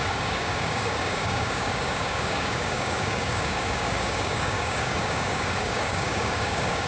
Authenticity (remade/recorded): remade